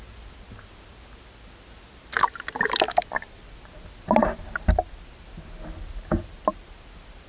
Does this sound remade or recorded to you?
recorded